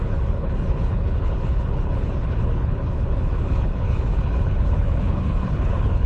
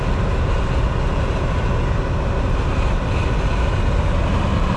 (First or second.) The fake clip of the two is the first